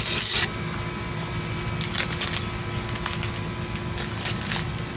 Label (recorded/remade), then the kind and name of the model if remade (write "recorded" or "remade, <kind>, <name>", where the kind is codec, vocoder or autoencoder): recorded